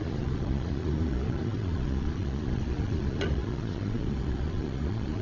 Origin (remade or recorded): remade